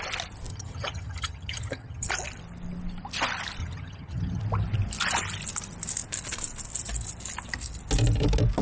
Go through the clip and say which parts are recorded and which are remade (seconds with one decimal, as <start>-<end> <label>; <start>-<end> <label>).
0.0-0.5 recorded; 0.5-2.1 remade; 2.1-3.6 recorded; 3.6-4.4 remade; 4.4-8.6 recorded